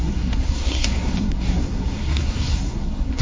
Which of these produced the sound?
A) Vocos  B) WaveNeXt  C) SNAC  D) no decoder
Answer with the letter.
C